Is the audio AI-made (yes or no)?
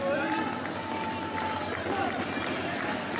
no